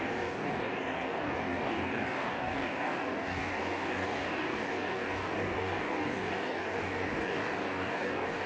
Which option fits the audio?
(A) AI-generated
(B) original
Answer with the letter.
A